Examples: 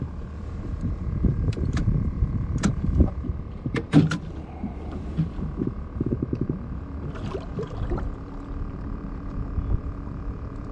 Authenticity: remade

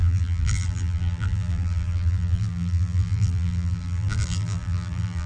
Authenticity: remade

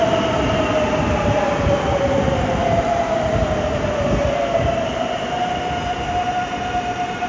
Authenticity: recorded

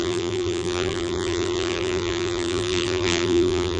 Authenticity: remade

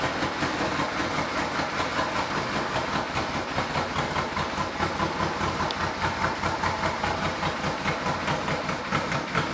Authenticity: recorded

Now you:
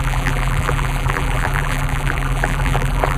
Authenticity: remade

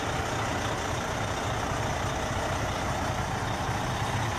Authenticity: recorded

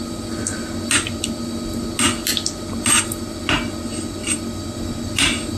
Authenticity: recorded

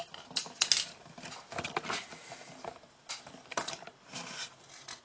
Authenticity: recorded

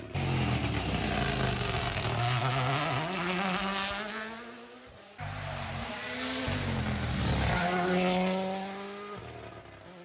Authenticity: recorded